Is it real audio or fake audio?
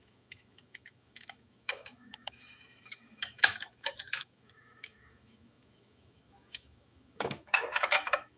fake